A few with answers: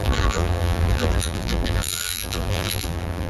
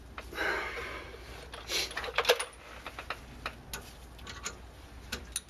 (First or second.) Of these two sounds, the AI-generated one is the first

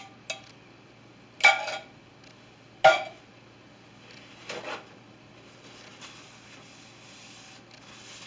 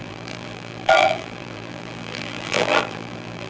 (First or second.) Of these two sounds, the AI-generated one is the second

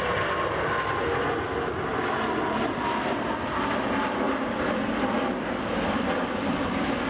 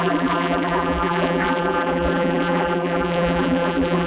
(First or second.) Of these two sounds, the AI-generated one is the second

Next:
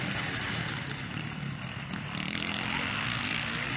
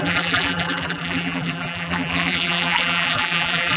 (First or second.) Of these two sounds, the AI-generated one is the second